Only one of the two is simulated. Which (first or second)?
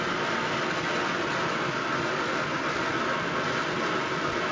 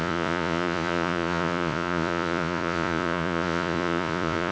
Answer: second